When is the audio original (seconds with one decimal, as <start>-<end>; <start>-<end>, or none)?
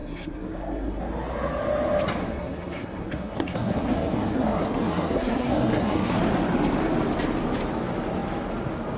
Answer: 1.0-2.2; 6.2-9.0